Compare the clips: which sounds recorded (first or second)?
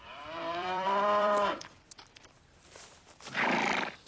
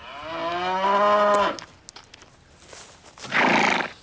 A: second